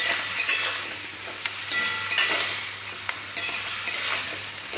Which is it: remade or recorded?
recorded